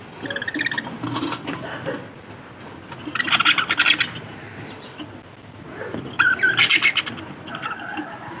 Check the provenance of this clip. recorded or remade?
recorded